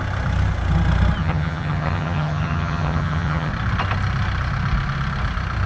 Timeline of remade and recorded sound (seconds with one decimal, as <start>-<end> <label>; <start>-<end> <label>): 0.0-1.2 recorded; 1.2-3.5 remade; 3.5-5.7 recorded